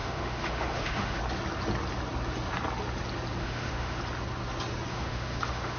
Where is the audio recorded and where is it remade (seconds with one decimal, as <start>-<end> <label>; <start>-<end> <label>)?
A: 0.0-1.2 remade; 1.2-3.4 recorded; 3.4-4.0 remade; 4.0-4.9 recorded; 4.9-5.8 remade